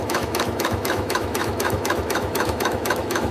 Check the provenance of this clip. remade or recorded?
remade